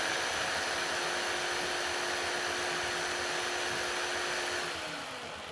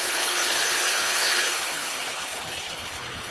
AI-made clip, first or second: second